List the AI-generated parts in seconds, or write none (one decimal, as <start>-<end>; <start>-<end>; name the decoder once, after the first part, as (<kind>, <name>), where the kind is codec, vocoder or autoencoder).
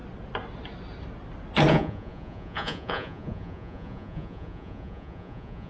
1.7-5.7 (vocoder, Vocos)